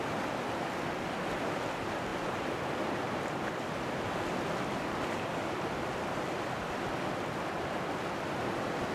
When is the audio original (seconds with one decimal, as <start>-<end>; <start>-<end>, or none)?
0.0-8.9